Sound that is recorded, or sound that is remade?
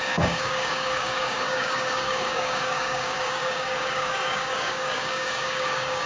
remade